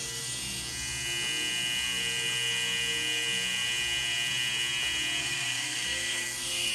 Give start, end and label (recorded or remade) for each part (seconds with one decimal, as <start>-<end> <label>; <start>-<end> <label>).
0.0-5.2 recorded; 5.2-6.7 remade